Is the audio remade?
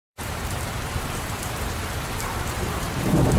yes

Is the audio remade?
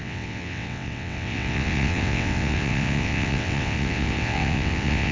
yes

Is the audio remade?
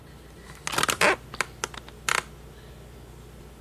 no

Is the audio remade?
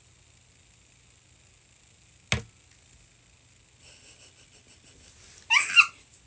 no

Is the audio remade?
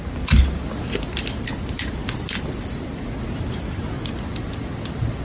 no